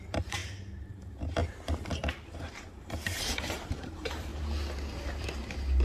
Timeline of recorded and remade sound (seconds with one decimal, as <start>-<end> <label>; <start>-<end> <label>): 0.0-0.4 remade; 0.4-0.9 recorded; 0.9-1.4 remade; 1.4-2.3 recorded; 2.3-4.3 remade; 4.3-5.8 recorded